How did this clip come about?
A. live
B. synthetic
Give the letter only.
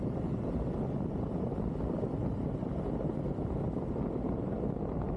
A